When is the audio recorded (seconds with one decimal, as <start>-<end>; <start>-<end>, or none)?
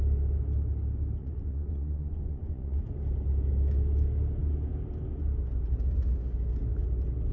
0.0-1.2; 2.8-7.3